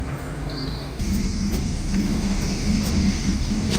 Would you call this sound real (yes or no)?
no